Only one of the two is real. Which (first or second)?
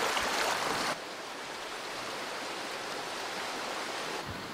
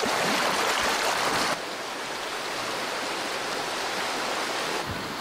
second